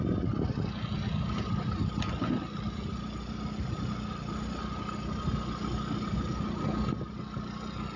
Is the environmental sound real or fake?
real